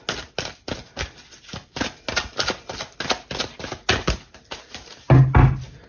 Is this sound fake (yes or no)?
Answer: no